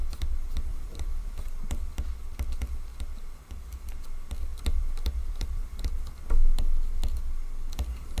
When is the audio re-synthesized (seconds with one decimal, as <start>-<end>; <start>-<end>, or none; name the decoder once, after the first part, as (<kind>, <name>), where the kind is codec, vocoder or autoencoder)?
0.7-1.4 (vocoder, BigVGAN v2); 4.5-5.9